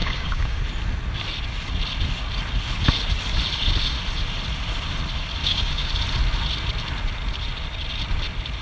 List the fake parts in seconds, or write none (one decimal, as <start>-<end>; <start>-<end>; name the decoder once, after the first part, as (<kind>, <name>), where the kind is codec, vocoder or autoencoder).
0.0-0.6 (codec, DAC); 5.4-5.9